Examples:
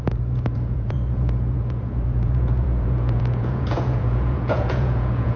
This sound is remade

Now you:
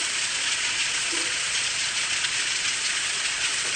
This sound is remade